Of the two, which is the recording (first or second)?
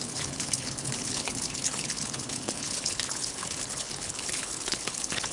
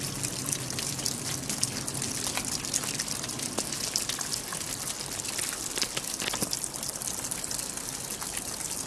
second